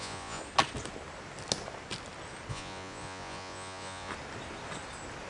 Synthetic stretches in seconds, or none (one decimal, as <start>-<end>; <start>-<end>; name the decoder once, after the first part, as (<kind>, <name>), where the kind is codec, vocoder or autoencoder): 0.0-0.4 (vocoder, Vocos); 2.5-4.1